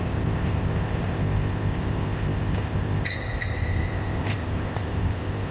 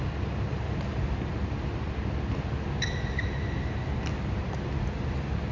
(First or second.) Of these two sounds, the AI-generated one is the first